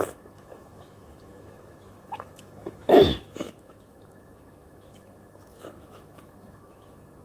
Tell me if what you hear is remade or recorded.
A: remade